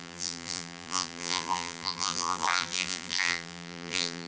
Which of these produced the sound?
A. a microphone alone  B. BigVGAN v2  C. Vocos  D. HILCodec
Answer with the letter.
B